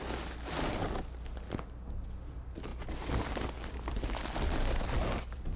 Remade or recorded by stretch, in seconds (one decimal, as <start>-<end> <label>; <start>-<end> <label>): 0.0-5.6 recorded